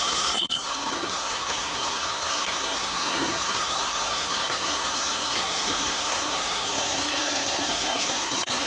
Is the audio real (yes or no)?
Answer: no